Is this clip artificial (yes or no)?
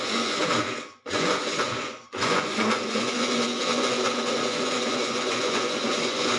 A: yes